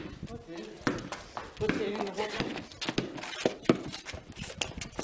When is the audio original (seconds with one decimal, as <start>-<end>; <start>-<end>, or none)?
0.0-5.0